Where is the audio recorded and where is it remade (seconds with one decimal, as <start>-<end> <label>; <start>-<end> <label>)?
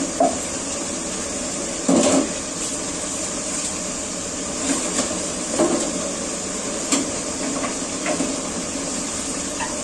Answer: 0.0-9.8 recorded